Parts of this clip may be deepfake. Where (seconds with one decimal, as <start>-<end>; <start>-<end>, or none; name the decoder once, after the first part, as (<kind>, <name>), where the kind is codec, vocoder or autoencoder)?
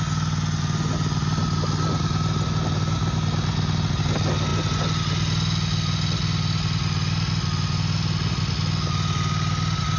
none